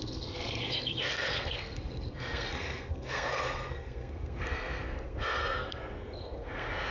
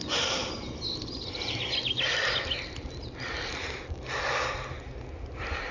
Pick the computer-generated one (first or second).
first